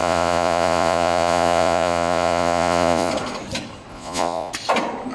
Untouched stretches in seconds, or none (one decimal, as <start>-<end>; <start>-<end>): 3.1-3.9; 4.5-5.1

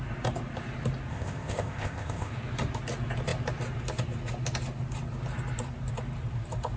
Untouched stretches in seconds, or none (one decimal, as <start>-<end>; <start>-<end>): 0.0-1.1; 2.3-6.8

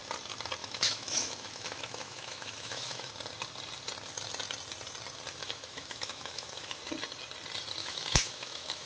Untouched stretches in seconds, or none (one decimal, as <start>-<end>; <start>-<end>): 0.0-0.6; 3.1-5.4; 6.8-7.8

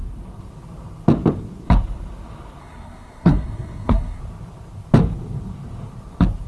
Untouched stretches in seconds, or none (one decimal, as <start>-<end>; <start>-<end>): 0.0-2.6; 4.2-6.5

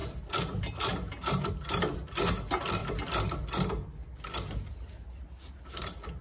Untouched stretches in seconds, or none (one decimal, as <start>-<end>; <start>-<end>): 0.0-6.2